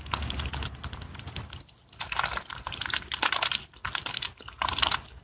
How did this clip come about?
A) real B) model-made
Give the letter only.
A